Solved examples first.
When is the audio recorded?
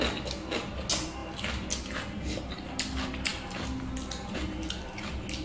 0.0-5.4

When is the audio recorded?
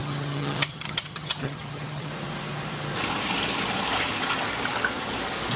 2.1-5.6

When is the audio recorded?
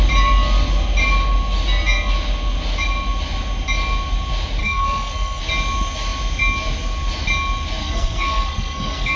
0.0-4.6; 5.4-7.8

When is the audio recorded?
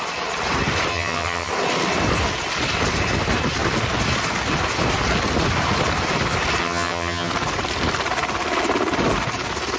0.0-0.9; 1.5-6.6; 7.3-9.8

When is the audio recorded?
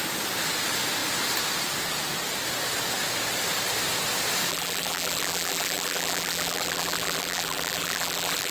0.0-4.5